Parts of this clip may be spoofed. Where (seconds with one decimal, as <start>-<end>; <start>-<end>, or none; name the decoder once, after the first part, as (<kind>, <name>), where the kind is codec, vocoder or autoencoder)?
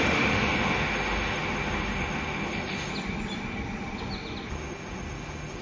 0.0-2.9 (autoencoder, DAC-VAE); 4.5-5.6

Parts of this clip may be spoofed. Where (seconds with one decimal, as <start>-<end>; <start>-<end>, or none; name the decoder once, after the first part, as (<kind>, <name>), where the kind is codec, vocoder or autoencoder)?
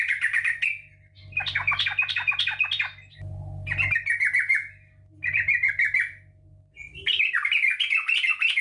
none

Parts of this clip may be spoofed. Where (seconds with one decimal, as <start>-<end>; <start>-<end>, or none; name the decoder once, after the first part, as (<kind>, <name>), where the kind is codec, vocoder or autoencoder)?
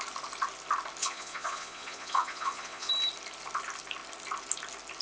1.0-2.9 (vocoder, Vocos)